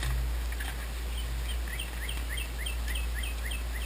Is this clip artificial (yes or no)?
no